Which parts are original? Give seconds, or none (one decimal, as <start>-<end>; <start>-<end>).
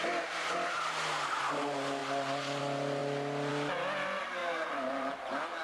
0.0-4.4